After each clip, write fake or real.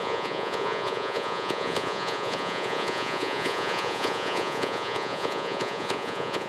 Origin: fake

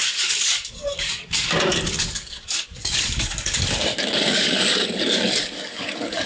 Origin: fake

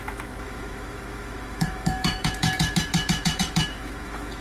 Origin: fake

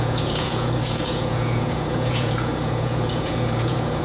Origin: fake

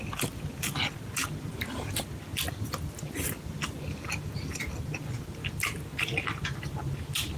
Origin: real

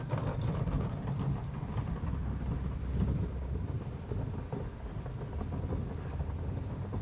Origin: real